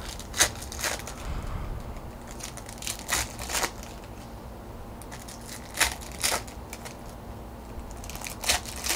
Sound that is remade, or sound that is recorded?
recorded